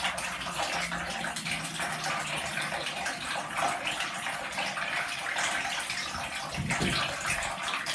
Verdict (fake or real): real